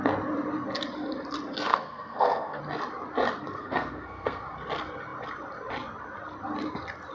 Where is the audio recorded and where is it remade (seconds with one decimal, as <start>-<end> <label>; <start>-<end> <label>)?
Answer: 0.0-1.7 recorded; 1.7-2.6 remade; 2.6-3.6 recorded; 3.6-4.4 remade; 4.4-7.1 recorded